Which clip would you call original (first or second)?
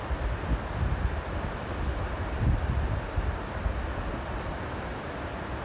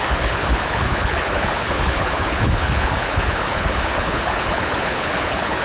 first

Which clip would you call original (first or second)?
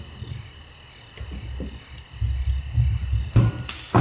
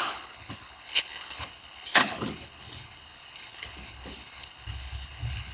first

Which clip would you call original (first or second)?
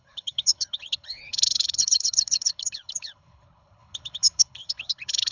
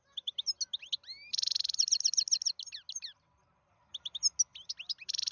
second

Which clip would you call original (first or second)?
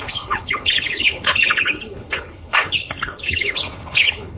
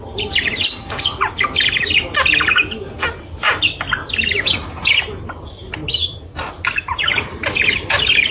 second